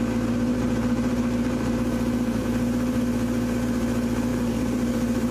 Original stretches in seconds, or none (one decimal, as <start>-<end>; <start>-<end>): 0.0-0.5; 3.0-4.3